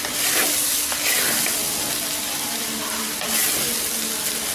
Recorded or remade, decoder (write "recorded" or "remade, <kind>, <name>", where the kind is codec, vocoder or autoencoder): recorded